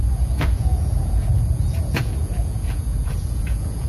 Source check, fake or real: fake